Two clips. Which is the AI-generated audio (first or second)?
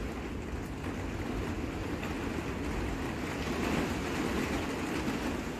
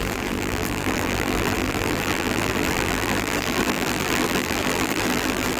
second